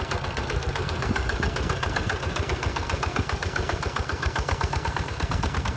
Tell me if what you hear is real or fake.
fake